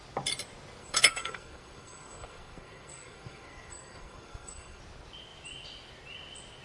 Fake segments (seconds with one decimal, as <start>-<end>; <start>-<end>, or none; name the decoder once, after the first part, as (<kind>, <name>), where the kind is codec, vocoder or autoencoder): 0.8-4.8 (codec, SNAC)